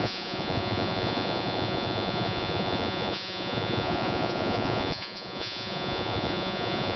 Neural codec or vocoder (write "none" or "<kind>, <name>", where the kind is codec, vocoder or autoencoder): vocoder, Vocos